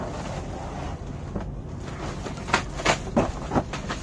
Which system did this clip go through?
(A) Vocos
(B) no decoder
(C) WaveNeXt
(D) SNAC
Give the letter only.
B